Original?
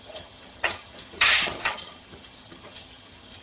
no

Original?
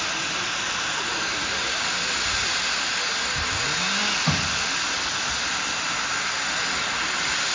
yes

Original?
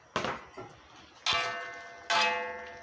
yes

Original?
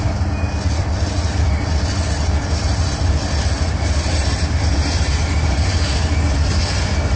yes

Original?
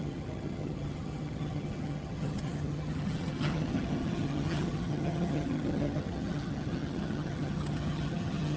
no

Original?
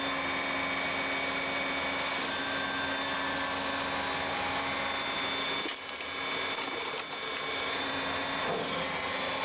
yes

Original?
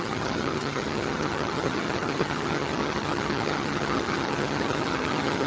no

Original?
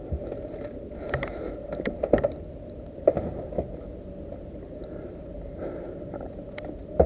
yes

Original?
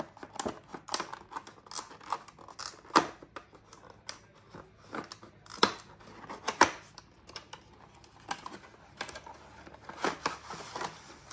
yes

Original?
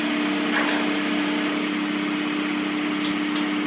yes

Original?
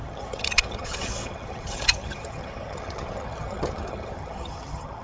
no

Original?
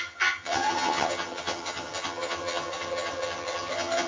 no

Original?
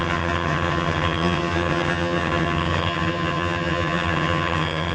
no